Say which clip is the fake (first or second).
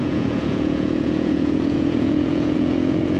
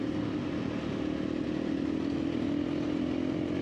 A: first